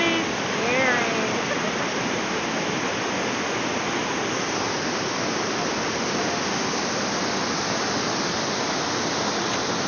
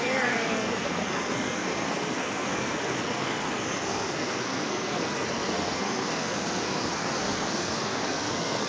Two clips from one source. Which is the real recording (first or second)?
first